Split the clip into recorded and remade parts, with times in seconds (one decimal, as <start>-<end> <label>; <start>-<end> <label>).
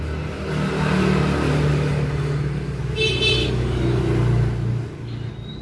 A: 0.0-1.9 recorded; 1.9-2.8 remade; 2.8-3.4 recorded; 3.4-4.0 remade; 4.0-5.6 recorded